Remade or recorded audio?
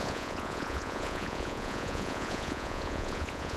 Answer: remade